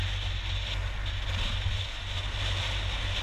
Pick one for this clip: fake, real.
real